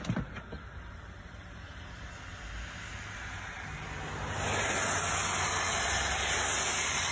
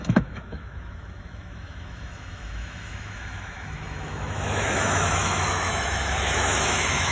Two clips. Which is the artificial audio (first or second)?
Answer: second